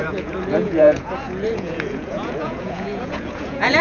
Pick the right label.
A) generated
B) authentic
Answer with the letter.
A